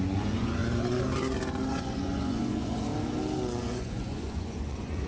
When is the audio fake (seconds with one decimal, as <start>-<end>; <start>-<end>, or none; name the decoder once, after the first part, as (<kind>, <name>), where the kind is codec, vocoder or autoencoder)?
0.0-0.6 (vocoder, Vocos); 1.7-2.9; 3.6-5.1